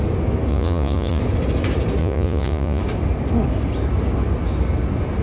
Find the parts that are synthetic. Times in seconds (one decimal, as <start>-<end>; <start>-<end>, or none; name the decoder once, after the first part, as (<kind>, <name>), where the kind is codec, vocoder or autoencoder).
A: 0.5-1.2 (vocoder, Vocos); 2.0-2.8